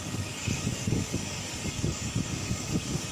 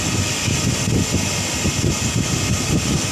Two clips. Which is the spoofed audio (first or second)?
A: first